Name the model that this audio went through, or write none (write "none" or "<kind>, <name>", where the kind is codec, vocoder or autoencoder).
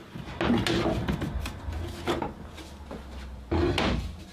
none